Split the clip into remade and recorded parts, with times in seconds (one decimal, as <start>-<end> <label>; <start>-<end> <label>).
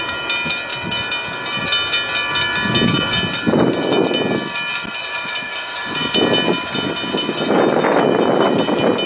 0.0-5.0 recorded; 5.0-6.1 remade; 6.1-9.1 recorded